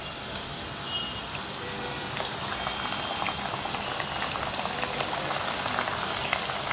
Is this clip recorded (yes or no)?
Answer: yes